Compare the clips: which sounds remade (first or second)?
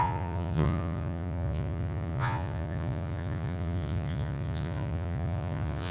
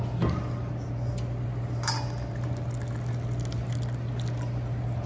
first